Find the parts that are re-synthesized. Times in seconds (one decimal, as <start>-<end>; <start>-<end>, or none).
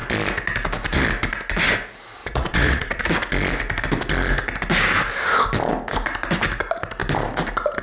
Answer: 2.2-3.1